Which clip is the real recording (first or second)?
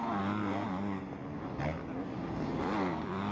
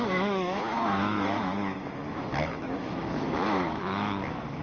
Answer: first